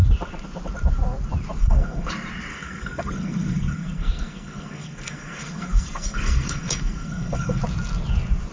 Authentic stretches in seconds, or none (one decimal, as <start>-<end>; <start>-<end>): 0.0-1.6; 2.1-2.5; 7.6-8.5